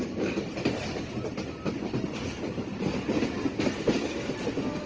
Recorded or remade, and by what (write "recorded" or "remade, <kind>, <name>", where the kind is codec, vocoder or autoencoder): recorded